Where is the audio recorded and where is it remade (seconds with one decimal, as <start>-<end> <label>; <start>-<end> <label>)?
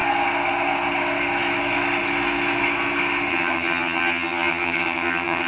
0.0-3.3 recorded; 3.3-5.5 remade